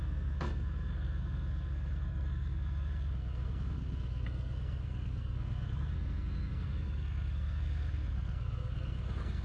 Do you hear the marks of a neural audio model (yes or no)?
yes